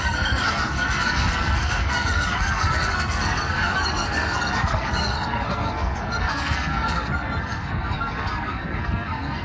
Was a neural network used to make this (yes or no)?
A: yes